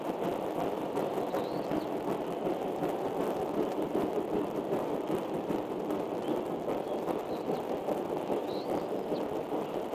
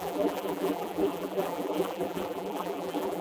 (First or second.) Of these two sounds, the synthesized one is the second